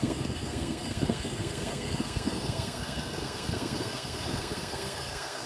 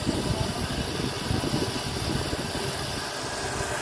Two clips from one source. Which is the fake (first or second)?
first